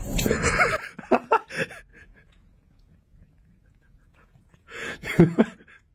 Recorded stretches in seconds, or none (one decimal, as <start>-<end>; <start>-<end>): 0.0-1.9; 5.4-5.9